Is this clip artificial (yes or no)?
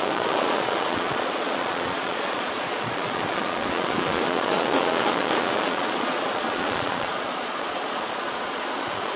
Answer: yes